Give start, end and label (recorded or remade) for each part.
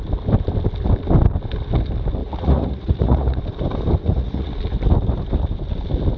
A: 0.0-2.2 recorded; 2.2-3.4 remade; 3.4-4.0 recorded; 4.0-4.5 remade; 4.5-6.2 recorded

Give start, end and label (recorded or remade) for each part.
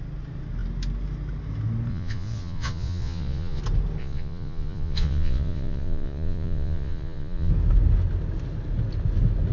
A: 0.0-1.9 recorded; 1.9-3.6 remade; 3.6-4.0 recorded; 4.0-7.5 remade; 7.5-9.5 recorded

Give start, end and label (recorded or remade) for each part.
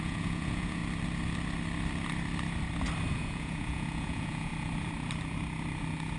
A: 0.0-0.8 remade; 0.8-3.1 recorded; 3.1-4.5 remade; 4.5-6.2 recorded